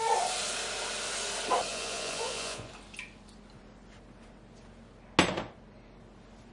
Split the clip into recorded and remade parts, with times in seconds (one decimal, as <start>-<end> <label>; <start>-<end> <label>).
0.0-1.7 recorded; 1.7-2.7 remade; 2.7-6.5 recorded